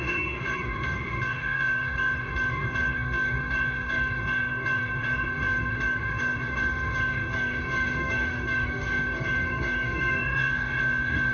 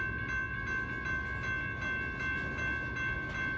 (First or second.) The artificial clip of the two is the first